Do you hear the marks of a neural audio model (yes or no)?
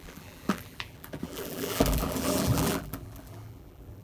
yes